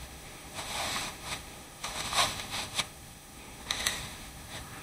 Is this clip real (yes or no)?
no